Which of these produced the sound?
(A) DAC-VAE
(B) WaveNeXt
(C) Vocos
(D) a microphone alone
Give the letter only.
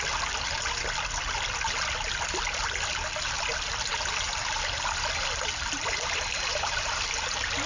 D